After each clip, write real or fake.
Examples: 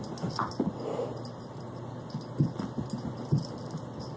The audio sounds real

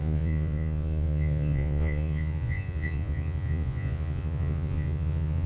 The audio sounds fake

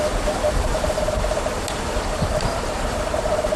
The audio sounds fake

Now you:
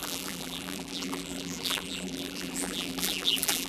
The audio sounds fake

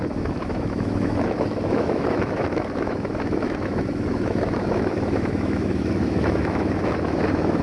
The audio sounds fake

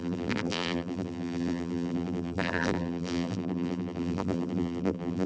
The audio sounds fake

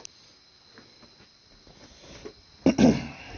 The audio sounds real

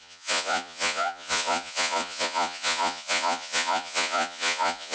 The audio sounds fake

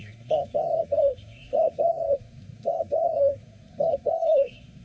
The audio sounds fake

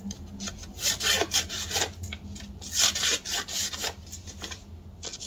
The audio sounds real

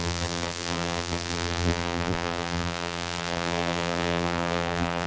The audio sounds fake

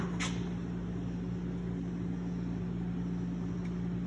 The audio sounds real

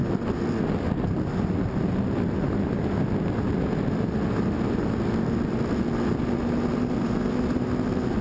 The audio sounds real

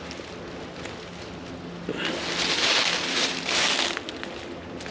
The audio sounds real